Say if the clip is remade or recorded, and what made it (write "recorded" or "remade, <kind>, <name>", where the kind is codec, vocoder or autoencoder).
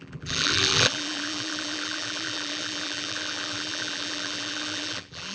remade, vocoder, BigVGAN v2